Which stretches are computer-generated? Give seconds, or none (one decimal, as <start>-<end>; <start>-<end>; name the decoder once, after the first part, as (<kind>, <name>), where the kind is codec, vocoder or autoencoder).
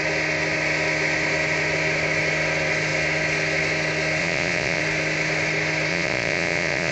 4.2-4.8 (vocoder, Vocos); 5.9-6.9